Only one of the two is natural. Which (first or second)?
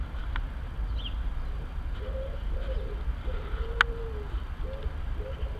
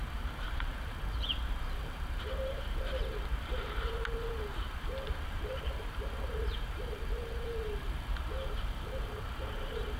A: first